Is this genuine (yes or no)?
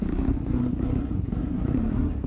no